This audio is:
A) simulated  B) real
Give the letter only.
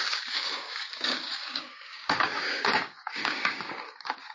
A